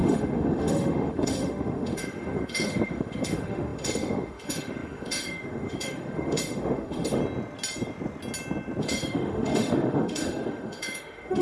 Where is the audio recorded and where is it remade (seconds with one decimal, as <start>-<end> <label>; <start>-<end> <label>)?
0.0-7.2 remade; 7.2-8.8 recorded; 8.8-11.4 remade